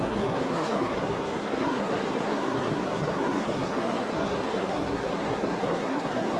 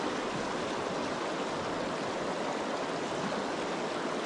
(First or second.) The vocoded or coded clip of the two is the first